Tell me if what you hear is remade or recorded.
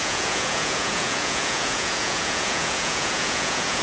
remade